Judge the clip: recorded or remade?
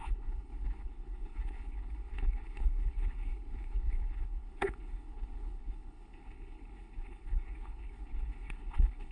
remade